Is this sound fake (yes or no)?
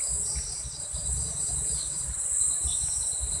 yes